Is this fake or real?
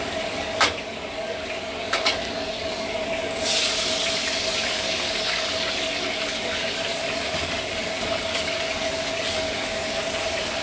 fake